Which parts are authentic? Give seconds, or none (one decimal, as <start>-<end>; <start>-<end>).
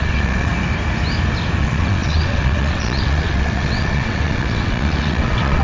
0.5-1.6